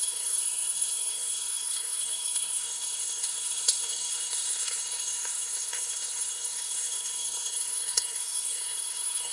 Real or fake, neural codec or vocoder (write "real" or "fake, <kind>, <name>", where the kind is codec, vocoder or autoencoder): fake, codec, SNAC